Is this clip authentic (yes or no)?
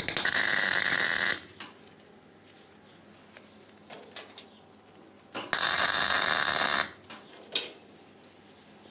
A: yes